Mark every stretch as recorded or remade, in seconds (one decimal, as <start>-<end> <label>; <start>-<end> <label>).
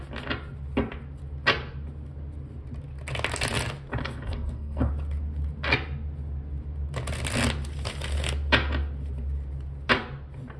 0.0-4.0 recorded; 4.0-4.9 remade; 4.9-10.6 recorded